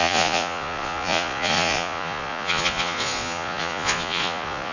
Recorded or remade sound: remade